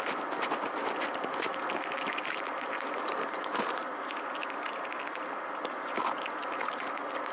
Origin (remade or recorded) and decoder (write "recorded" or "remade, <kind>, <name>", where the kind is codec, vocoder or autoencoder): recorded